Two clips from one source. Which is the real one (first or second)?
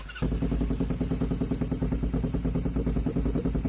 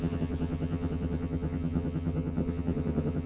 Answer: first